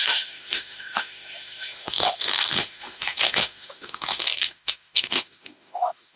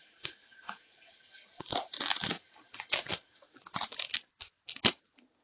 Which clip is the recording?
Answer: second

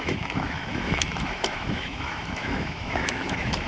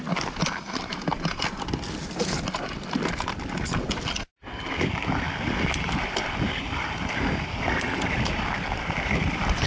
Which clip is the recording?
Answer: second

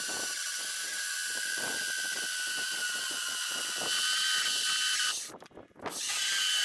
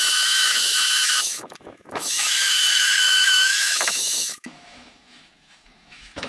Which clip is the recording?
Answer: first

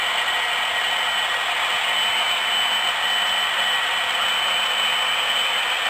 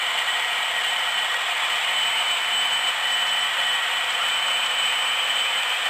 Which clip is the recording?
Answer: first